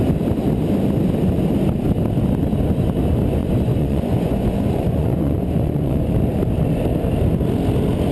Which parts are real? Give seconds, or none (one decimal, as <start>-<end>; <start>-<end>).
0.0-3.4; 6.1-8.1